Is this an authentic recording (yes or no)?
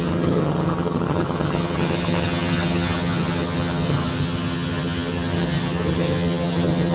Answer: no